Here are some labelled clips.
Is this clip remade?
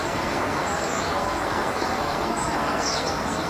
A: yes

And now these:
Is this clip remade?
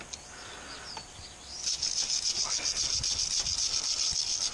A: no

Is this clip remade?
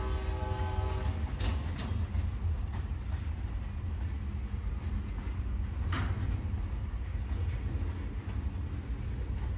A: no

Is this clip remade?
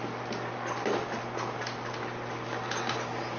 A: no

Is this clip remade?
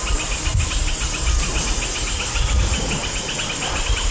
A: no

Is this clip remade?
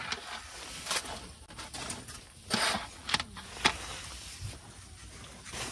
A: no